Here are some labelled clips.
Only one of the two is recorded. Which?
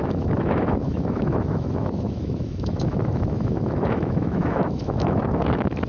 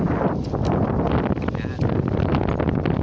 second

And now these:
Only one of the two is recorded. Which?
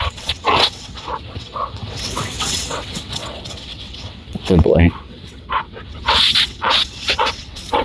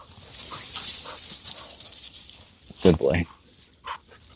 second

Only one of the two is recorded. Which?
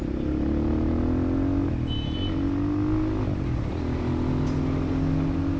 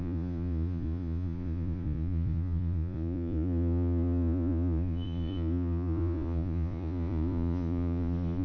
first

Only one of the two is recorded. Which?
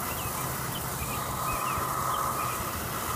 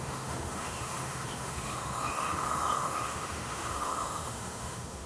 first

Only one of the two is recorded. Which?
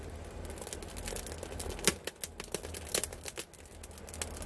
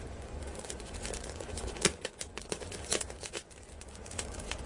first